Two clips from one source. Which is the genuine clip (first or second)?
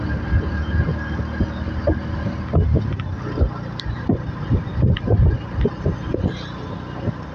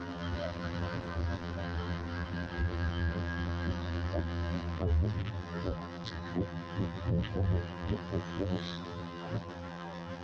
first